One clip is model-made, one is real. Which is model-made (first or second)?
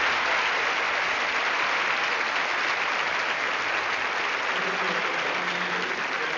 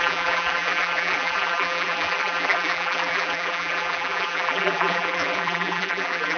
second